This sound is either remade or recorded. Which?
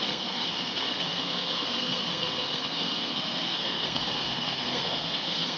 remade